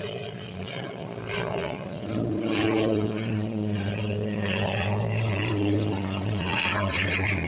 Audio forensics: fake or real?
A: fake